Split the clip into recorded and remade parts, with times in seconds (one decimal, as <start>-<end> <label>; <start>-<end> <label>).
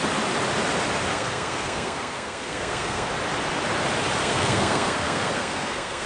0.0-1.1 recorded; 1.1-3.1 remade; 3.1-4.2 recorded; 4.2-6.1 remade